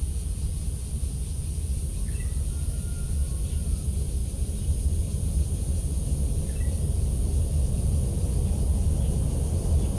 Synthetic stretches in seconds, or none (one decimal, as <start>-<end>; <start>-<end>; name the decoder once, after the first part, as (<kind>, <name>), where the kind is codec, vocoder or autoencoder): none